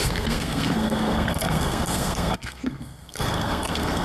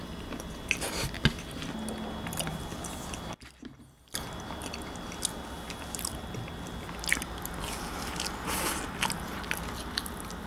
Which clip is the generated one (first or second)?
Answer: first